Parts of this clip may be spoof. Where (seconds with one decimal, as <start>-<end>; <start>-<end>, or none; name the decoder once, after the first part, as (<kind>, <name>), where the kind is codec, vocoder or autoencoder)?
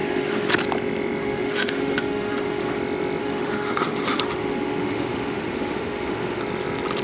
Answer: 0.0-0.5 (autoencoder, DAC-VAE); 1.2-2.8; 3.2-6.4